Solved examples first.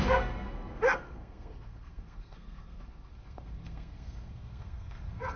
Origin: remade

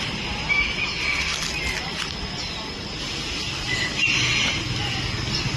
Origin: recorded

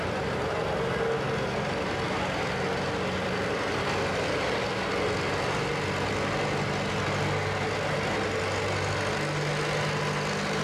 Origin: recorded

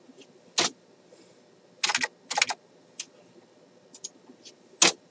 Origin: recorded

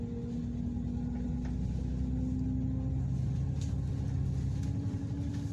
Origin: recorded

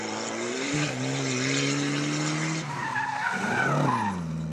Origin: recorded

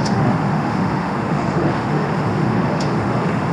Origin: remade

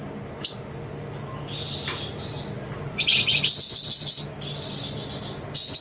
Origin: recorded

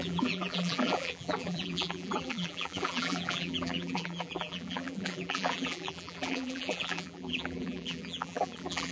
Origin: remade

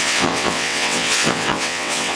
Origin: remade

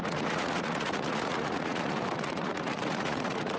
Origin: remade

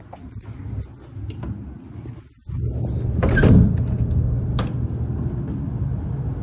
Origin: recorded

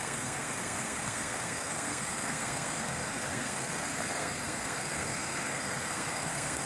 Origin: remade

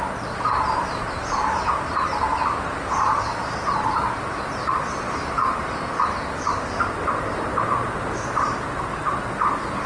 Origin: recorded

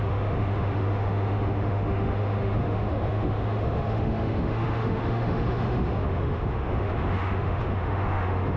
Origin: remade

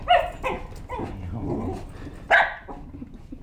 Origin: recorded